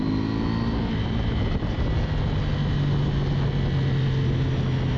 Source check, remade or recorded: recorded